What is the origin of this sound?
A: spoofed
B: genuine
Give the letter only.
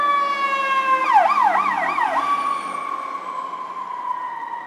B